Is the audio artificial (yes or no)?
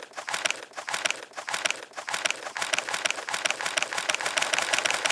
no